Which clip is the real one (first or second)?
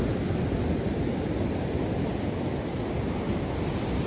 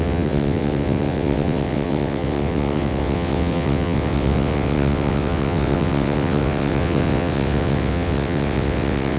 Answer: first